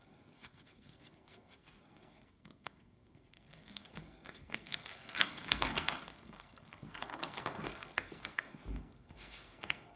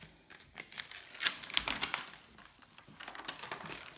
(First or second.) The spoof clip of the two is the first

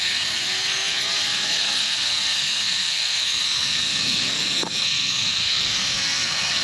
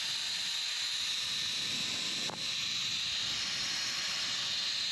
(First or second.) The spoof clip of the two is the first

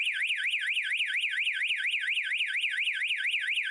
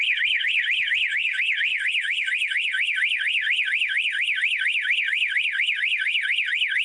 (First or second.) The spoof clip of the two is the second